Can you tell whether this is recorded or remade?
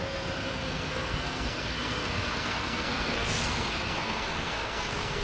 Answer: remade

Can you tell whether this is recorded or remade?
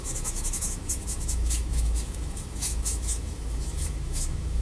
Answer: remade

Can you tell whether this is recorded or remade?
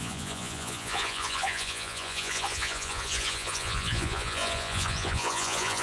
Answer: remade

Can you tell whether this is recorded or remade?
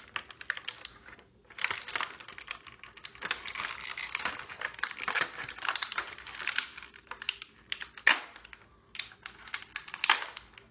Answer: recorded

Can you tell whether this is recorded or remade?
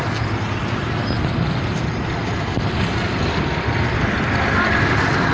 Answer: recorded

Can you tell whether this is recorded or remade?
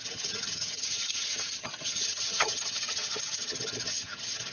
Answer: remade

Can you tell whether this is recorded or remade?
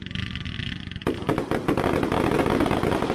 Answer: recorded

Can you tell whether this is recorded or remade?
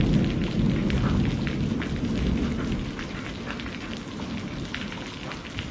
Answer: recorded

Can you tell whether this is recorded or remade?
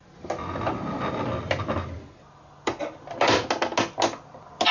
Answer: recorded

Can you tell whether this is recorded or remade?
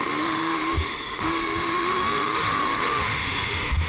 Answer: remade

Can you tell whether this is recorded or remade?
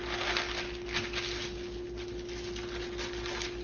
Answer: recorded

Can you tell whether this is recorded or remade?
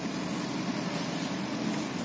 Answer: recorded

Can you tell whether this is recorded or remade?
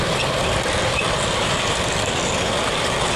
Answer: recorded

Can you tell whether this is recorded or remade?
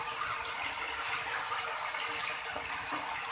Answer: recorded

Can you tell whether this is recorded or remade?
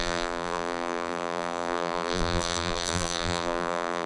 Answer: remade